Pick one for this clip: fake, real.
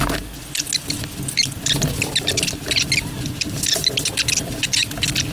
real